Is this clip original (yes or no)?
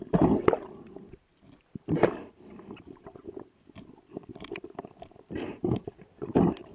no